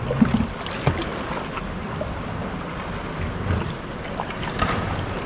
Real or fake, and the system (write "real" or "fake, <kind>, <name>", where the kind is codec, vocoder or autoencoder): real